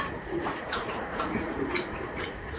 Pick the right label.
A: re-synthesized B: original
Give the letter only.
A